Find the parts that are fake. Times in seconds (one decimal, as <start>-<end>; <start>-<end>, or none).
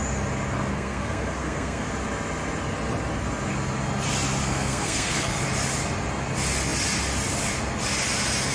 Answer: 0.7-1.9; 4.4-5.4